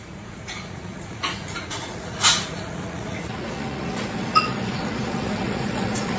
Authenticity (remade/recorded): remade